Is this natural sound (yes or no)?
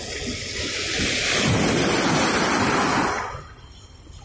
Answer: yes